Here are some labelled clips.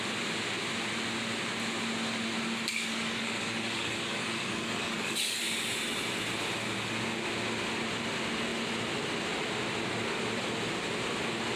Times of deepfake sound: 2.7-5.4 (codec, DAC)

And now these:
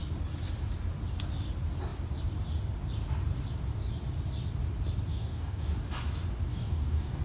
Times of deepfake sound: 5.1-5.8 (codec, DAC); 6.5-7.2

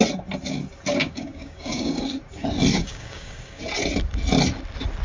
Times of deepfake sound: 1.0-2.1 (codec, DAC); 2.8-3.6

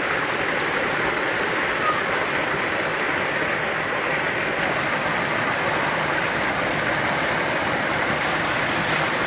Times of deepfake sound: none

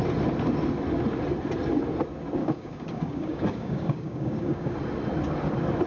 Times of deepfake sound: 2.4-4.7 (codec, DAC)

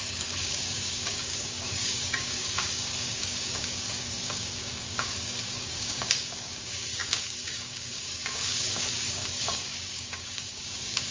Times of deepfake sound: 0.0-11.1 (codec, DAC)